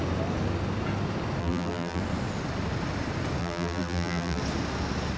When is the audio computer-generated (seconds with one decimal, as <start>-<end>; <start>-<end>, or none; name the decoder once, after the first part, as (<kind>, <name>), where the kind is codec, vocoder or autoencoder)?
1.4-2.0 (vocoder, BigVGAN v2); 3.4-4.4